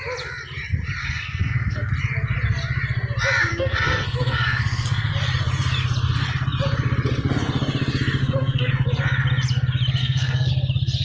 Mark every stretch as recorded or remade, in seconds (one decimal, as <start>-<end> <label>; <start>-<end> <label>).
0.0-1.0 recorded; 1.0-1.9 remade; 1.9-3.5 recorded; 3.5-5.1 remade; 5.1-8.2 recorded; 8.2-8.7 remade; 8.7-10.0 recorded; 10.0-10.5 remade; 10.5-11.0 recorded